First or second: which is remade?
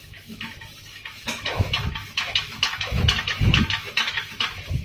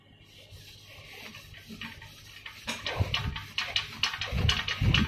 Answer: first